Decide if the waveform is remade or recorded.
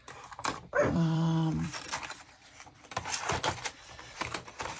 remade